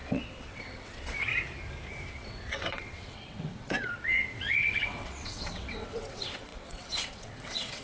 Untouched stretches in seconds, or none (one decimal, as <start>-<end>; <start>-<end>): 1.3-2.1